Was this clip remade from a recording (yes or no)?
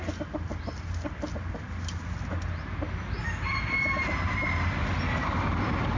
no